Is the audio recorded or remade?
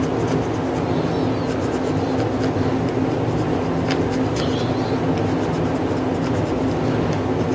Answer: recorded